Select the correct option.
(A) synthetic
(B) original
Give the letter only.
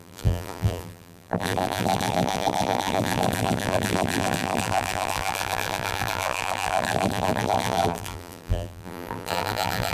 A